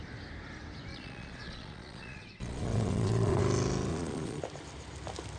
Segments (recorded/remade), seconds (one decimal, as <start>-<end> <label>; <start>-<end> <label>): 0.0-0.9 recorded; 0.9-3.4 remade; 3.4-3.9 recorded; 3.9-4.4 remade; 4.4-5.4 recorded